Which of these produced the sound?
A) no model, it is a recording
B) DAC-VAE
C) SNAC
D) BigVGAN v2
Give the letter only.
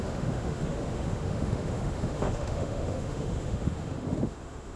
B